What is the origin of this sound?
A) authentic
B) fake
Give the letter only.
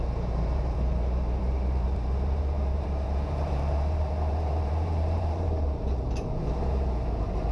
B